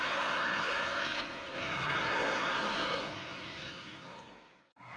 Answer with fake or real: fake